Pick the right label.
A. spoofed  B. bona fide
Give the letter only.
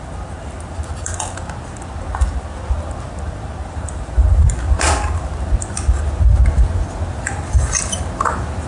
B